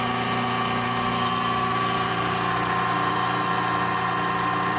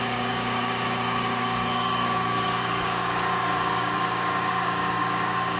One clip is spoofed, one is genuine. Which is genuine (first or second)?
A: first